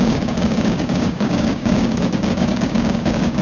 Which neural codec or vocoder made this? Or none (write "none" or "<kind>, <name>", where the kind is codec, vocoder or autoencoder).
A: codec, DAC